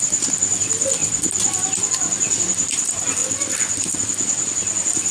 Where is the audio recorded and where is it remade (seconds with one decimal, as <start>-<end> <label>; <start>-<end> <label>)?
0.0-1.0 remade; 1.0-2.4 recorded; 2.4-3.2 remade; 3.2-5.1 recorded